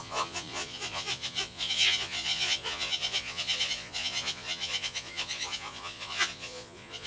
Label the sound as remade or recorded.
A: remade